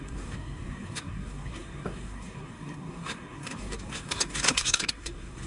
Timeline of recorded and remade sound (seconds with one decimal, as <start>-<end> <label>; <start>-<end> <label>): 0.0-5.5 remade